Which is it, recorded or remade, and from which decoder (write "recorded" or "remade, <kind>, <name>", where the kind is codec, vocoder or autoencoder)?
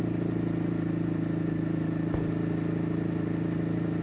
recorded